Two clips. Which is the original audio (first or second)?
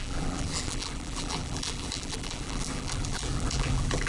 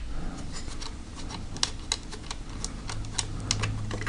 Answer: second